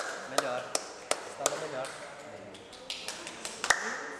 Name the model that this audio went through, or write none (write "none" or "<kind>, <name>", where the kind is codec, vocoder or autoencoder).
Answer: none